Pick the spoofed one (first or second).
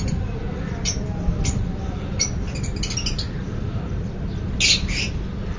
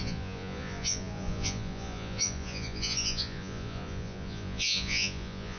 second